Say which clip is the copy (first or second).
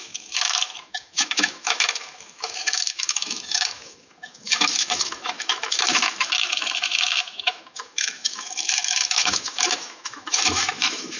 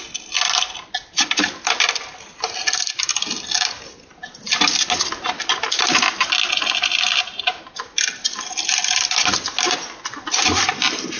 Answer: first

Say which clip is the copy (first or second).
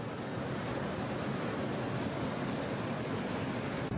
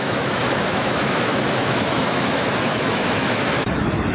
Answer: second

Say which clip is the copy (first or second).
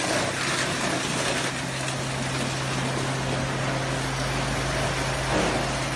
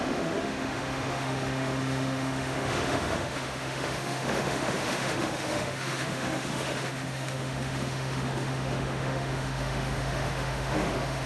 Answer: second